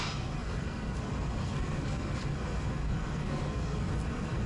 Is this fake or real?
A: fake